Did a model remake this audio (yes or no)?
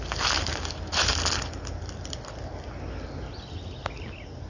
no